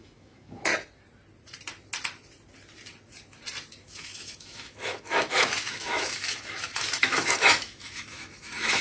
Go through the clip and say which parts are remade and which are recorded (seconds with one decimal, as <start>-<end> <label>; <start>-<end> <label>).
0.0-0.7 remade; 0.7-3.8 recorded; 3.8-8.8 remade